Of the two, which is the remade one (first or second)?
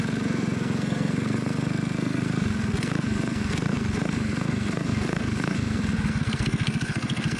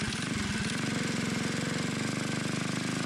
first